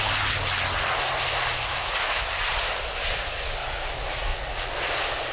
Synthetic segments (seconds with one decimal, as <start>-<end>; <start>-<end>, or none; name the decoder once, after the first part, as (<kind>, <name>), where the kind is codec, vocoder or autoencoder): 1.7-2.3 (autoencoder, DAC-VAE); 3.6-4.2